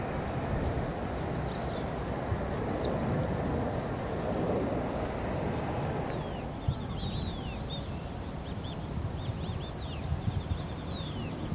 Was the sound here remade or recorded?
recorded